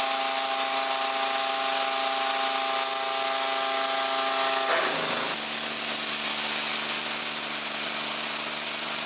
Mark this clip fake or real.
real